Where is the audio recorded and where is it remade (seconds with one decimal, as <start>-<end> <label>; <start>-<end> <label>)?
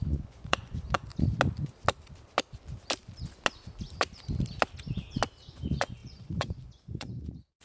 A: 0.0-1.1 remade; 1.1-5.5 recorded; 5.5-7.6 remade